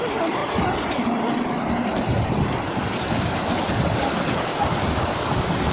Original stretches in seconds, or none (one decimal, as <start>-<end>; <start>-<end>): 4.5-5.7